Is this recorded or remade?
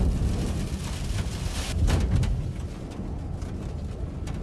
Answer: recorded